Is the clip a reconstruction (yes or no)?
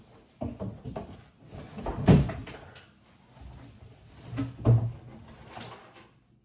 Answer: no